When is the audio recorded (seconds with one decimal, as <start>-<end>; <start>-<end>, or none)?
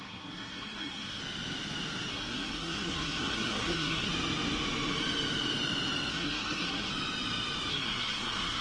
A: 1.2-2.1; 4.1-6.1; 6.9-7.7